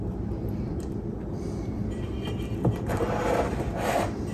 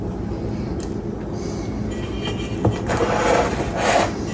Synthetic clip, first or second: first